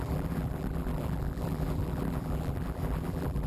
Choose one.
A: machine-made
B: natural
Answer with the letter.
A